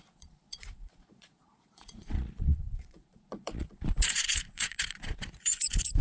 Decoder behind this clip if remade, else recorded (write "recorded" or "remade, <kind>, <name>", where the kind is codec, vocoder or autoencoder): remade, vocoder, Vocos